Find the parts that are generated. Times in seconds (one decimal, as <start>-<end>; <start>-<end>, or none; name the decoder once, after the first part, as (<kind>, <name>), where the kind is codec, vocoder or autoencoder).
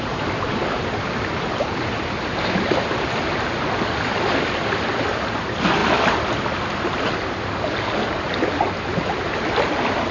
0.6-1.5 (vocoder, BigVGAN v2)